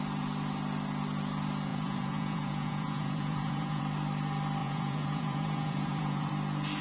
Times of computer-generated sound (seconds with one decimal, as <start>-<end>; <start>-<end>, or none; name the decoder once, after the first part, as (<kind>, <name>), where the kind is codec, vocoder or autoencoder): 1.7-3.8 (vocoder, Vocos); 4.6-6.3